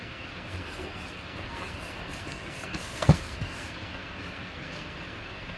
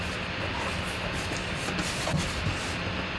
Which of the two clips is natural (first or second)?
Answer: second